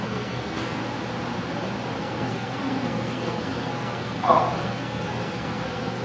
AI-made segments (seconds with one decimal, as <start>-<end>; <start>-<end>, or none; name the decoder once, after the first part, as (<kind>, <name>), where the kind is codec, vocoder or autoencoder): 0.0-0.8 (codec, SNAC); 2.0-6.0